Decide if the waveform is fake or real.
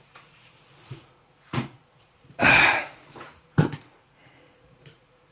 fake